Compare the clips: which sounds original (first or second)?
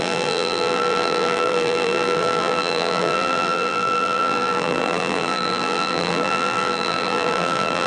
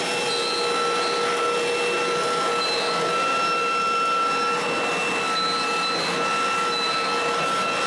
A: second